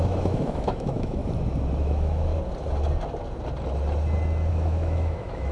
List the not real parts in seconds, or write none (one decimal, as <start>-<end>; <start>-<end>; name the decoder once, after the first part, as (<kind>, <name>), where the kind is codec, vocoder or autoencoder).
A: 0.0-1.2 (autoencoder, DAC-VAE); 1.8-2.3; 4.5-5.5